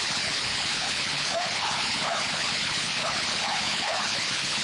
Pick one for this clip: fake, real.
fake